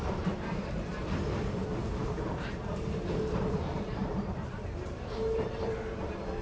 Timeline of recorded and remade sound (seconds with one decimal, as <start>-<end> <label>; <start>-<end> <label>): 0.0-6.4 remade

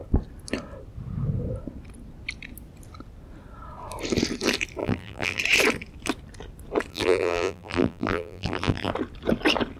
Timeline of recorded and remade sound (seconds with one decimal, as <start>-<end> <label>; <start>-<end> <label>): 0.0-4.8 recorded; 4.8-5.4 remade; 5.4-6.9 recorded; 6.9-8.9 remade; 8.9-9.8 recorded

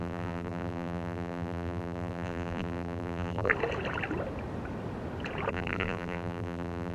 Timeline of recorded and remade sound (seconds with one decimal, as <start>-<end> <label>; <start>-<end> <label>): 0.0-3.5 remade; 3.5-5.5 recorded; 5.5-6.9 remade

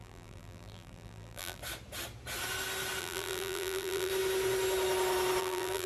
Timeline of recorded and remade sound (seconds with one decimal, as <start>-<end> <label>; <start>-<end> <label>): 0.0-1.6 remade; 1.6-3.0 recorded; 3.0-4.1 remade; 4.1-5.4 recorded; 5.4-5.9 remade

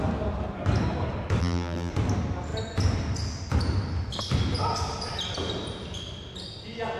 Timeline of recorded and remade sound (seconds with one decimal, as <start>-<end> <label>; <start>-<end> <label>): 0.0-1.4 recorded; 1.4-1.9 remade; 1.9-7.0 recorded

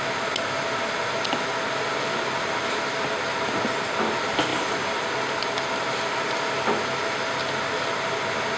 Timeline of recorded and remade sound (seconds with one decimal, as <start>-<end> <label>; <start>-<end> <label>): 0.0-4.5 recorded; 4.5-5.1 remade; 5.1-8.6 recorded

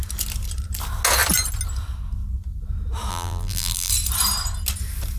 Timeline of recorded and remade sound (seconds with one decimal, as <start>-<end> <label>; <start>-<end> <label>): 0.0-3.1 recorded; 3.1-3.9 remade; 3.9-5.2 recorded

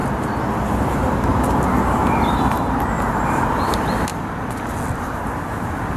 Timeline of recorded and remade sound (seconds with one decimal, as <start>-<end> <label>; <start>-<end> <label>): 0.0-4.1 remade; 4.1-4.9 recorded; 4.9-6.0 remade